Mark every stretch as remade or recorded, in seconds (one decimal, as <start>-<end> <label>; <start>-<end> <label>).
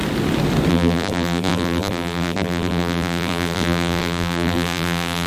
0.0-0.7 recorded; 0.7-5.3 remade